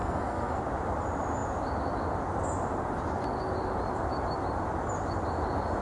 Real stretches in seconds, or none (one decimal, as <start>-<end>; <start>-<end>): 0.6-5.8